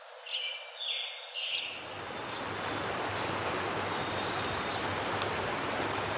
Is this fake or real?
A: real